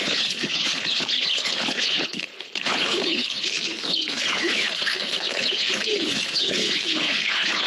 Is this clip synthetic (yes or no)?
yes